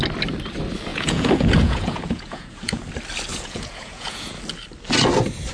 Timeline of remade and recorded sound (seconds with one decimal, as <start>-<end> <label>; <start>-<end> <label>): 0.0-0.9 recorded; 0.9-2.9 remade; 2.9-3.3 recorded; 3.3-4.4 remade; 4.4-5.5 recorded

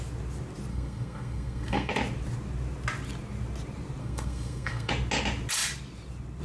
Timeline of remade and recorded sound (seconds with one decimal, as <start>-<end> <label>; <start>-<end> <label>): 0.0-0.7 recorded; 0.7-1.9 remade; 1.9-4.0 recorded; 4.0-4.9 remade; 4.9-6.4 recorded